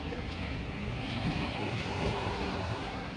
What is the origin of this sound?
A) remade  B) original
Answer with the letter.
A